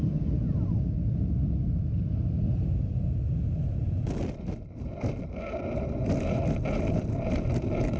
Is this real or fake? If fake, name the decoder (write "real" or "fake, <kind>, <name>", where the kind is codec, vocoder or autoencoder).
fake, vocoder, BigVGAN v2